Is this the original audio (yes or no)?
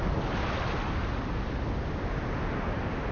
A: yes